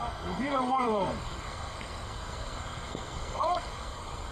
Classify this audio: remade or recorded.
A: remade